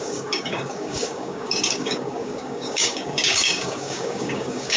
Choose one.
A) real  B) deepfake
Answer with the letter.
B